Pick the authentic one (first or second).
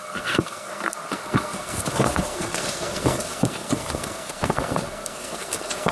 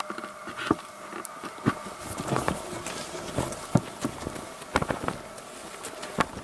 second